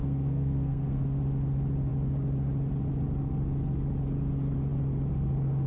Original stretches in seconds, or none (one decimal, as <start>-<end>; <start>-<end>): 1.2-5.7